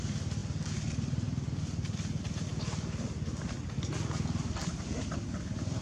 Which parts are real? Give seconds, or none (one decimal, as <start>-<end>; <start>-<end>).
0.0-4.6; 5.1-5.8